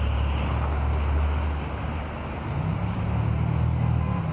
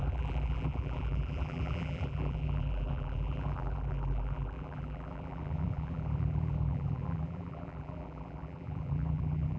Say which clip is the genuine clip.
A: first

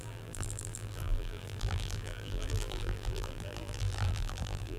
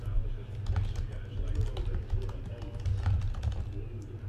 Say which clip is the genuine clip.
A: second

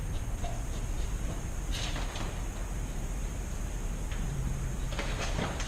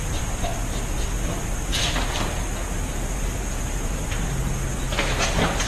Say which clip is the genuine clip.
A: second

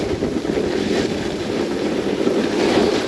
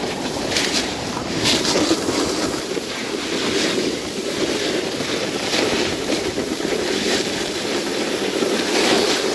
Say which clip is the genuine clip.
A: first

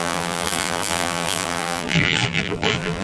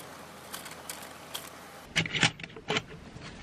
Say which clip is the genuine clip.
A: second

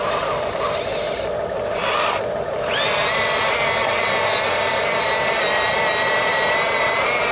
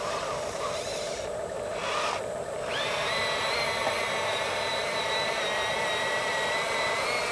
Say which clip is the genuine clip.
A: first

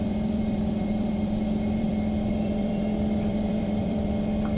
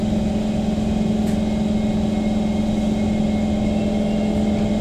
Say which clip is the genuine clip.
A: second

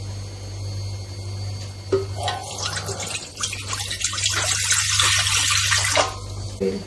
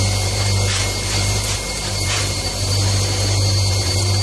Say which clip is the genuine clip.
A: first